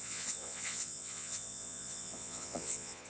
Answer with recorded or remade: remade